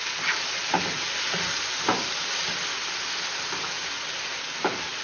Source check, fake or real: real